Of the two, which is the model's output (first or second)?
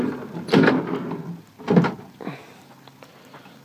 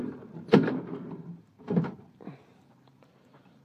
second